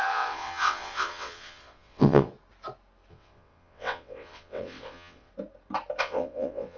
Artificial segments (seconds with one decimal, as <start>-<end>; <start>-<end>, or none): 0.0-2.3; 3.1-5.3; 6.0-6.8

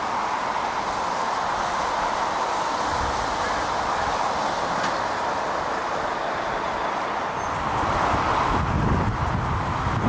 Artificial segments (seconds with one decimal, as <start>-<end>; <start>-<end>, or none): none

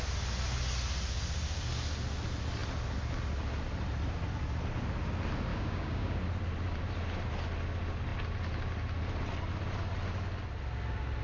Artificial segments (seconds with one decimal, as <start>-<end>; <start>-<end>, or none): 5.5-6.2

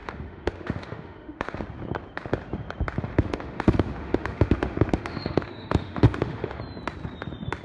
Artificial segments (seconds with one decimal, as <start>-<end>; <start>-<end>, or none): 0.0-1.6; 3.1-6.6

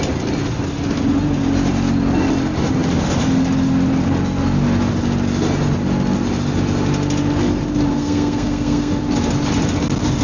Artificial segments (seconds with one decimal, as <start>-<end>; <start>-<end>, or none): 7.9-9.0

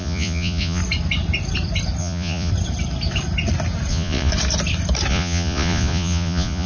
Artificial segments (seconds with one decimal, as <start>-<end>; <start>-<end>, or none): 0.0-0.8; 2.0-2.5; 3.9-4.3; 5.1-6.7

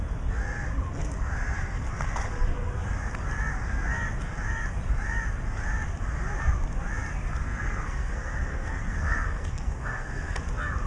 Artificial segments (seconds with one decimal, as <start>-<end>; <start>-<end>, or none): 7.4-10.4

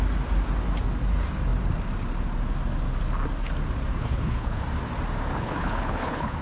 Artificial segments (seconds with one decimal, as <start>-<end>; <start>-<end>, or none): 3.9-4.6; 5.3-6.4